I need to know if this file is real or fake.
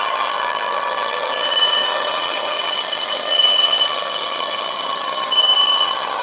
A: fake